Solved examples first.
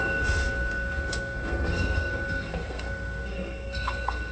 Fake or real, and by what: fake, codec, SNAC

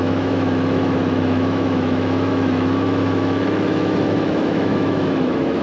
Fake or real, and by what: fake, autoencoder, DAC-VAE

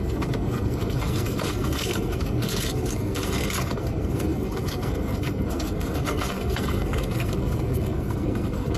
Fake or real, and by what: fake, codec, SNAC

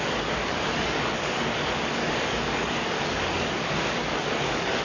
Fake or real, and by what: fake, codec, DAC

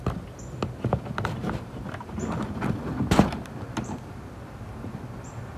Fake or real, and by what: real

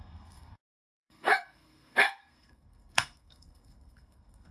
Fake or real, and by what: fake, codec, SNAC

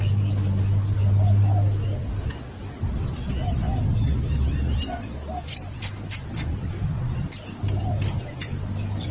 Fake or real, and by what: real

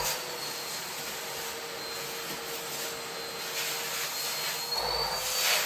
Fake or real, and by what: real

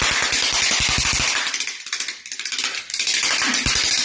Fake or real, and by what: real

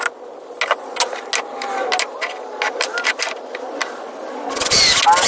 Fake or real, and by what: real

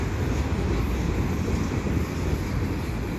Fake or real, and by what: real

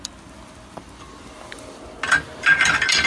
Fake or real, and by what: real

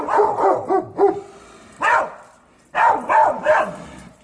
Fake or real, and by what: real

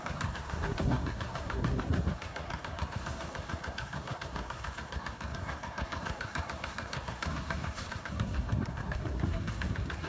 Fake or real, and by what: fake, codec, SNAC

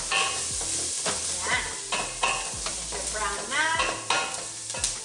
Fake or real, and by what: real